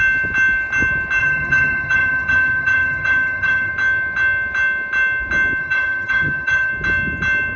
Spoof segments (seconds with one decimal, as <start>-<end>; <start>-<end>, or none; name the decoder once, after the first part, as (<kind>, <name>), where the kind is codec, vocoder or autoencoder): 1.2-3.7 (vocoder, HiFi-GAN); 5.6-6.7